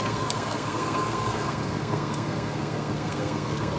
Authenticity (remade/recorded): remade